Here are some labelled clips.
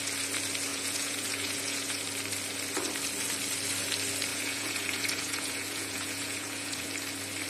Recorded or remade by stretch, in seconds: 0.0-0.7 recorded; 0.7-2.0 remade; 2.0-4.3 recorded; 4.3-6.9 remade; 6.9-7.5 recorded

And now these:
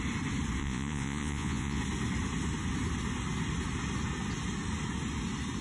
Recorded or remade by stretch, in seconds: 0.0-0.6 recorded; 0.6-1.8 remade; 1.8-5.6 recorded

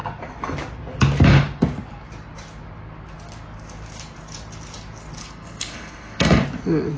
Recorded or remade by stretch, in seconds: 0.0-5.2 recorded; 5.2-6.4 remade; 6.4-7.0 recorded

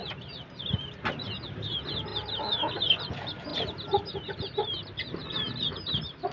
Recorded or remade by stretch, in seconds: 0.0-6.3 recorded

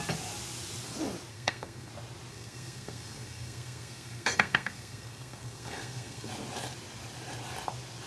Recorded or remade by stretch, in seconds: 0.0-1.3 recorded; 1.3-1.9 remade; 1.9-2.3 recorded; 2.3-6.3 remade; 6.3-8.1 recorded

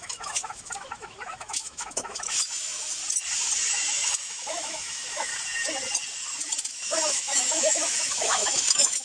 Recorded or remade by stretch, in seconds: 0.0-3.0 remade; 3.0-3.7 recorded; 3.7-5.3 remade; 5.3-6.7 recorded; 6.7-9.0 remade

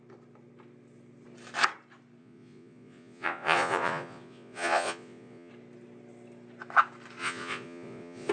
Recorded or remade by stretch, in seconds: 0.0-2.2 recorded; 2.2-5.5 remade; 5.5-7.2 recorded; 7.2-8.3 remade